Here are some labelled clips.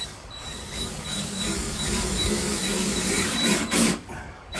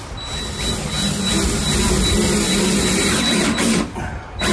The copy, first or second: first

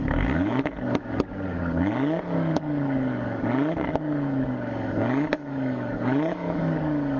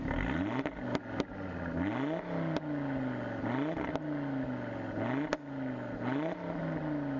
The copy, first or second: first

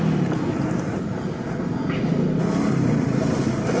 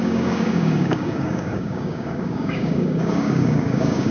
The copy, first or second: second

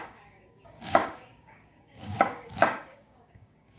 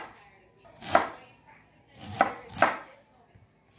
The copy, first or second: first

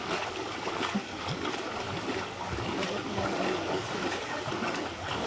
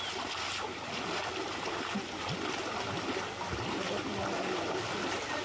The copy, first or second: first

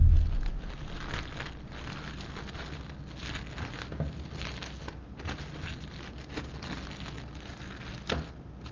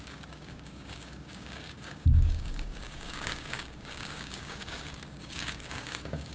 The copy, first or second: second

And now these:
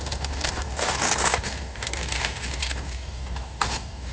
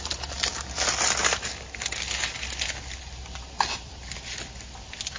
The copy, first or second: first